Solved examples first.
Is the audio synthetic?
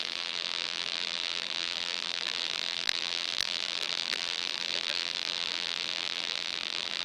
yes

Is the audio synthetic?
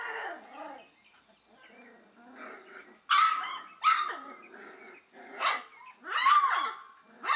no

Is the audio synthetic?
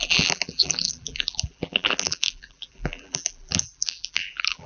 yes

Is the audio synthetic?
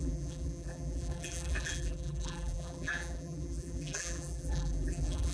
yes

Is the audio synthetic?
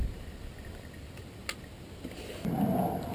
no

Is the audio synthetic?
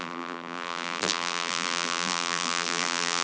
yes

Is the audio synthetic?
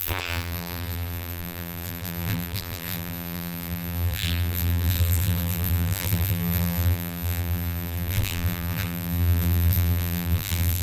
yes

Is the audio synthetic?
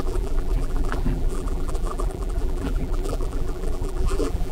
yes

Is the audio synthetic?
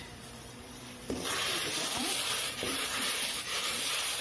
yes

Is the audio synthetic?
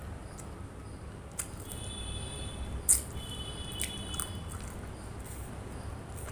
no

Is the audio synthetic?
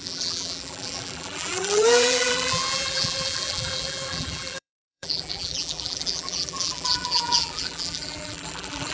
yes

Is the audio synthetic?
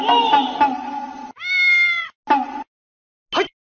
no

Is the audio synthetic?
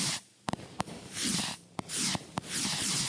yes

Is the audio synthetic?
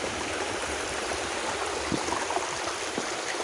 no